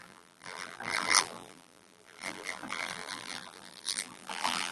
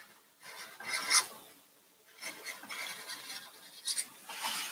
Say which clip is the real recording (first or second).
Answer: second